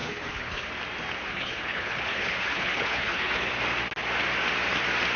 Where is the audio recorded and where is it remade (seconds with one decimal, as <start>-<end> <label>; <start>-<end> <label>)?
0.0-0.7 remade; 0.7-1.3 recorded; 1.3-3.5 remade; 3.5-5.2 recorded